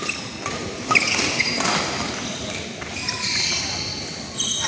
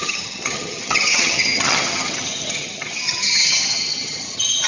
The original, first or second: first